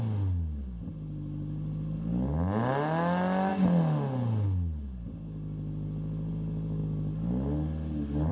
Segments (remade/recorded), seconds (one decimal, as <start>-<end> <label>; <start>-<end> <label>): 0.0-8.3 recorded

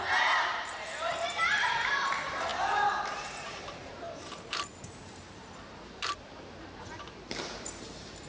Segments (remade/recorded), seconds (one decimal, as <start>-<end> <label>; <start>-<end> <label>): 0.0-8.3 remade

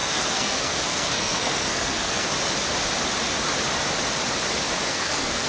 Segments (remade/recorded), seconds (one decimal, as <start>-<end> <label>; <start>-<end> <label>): 0.0-2.3 remade; 2.3-4.9 recorded; 4.9-5.5 remade

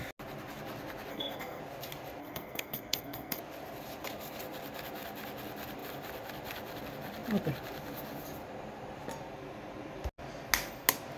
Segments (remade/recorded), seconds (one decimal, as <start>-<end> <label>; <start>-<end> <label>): 0.0-1.1 recorded; 1.1-1.6 remade; 1.6-2.2 recorded; 2.2-3.4 remade; 3.4-11.2 recorded

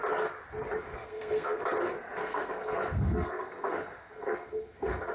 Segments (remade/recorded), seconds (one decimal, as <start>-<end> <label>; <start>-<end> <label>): 0.0-0.9 recorded; 0.9-1.6 remade; 1.6-2.2 recorded; 2.2-5.1 remade

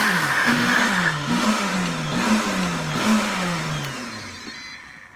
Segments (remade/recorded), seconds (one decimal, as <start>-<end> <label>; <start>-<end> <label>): 0.0-1.7 remade; 1.7-3.0 recorded; 3.0-3.6 remade; 3.6-5.2 recorded

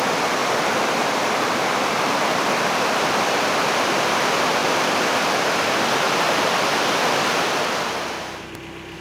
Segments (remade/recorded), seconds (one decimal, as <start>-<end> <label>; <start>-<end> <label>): 0.0-0.4 recorded; 0.4-2.1 remade; 2.1-9.0 recorded